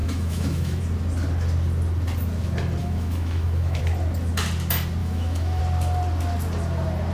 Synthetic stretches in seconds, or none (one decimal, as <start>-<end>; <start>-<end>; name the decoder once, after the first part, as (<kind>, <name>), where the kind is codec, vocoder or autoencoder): 0.0-0.8 (autoencoder, DAC-VAE); 2.8-3.8; 5.0-5.6